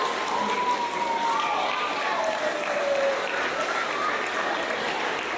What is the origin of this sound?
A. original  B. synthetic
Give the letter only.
A